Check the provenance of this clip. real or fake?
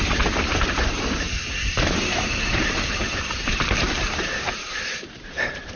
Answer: fake